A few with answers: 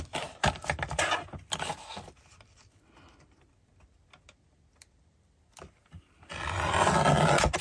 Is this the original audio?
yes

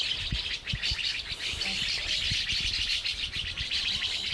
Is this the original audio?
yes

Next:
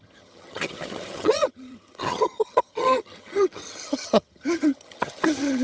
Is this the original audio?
no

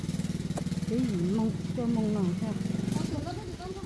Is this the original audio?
yes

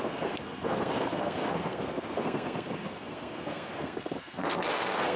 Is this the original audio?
no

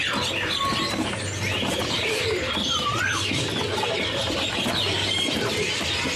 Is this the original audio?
no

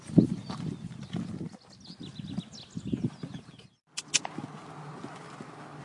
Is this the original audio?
yes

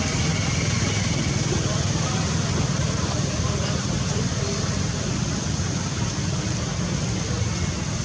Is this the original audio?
yes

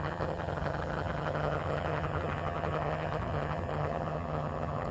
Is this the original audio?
no